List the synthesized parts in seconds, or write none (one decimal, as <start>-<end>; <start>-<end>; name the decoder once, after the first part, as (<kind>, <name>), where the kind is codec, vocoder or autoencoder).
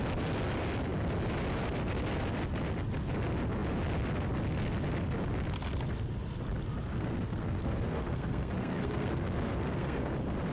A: 6.9-10.1 (codec, SNAC)